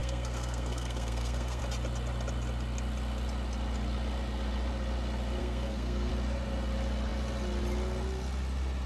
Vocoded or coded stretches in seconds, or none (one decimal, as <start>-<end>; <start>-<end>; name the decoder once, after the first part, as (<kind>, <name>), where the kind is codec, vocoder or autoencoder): 0.0-1.6 (codec, SNAC); 5.4-6.1